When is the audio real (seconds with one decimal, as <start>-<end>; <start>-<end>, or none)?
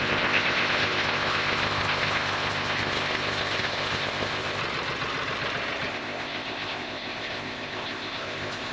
4.6-5.9